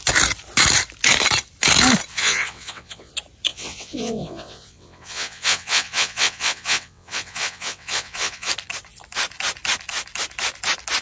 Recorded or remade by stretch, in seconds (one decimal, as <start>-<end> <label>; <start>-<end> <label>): 0.0-2.1 recorded; 2.1-3.1 remade; 3.1-3.5 recorded; 3.5-8.5 remade; 8.5-11.0 recorded